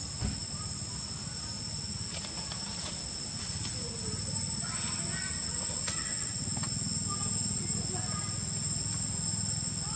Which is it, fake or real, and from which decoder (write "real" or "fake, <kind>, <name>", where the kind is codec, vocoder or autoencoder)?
real